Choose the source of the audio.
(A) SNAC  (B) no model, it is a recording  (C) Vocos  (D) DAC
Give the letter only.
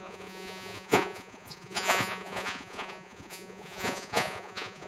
C